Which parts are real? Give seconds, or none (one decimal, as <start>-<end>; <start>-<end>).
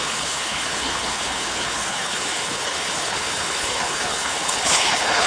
none